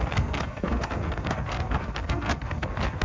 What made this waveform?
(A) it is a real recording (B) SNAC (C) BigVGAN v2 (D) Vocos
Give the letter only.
B